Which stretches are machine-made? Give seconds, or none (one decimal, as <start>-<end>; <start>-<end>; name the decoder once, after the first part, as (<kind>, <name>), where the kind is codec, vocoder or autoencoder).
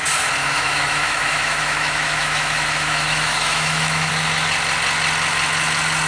0.4-4.1 (autoencoder, DAC-VAE)